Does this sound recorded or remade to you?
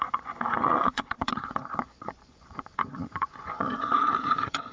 remade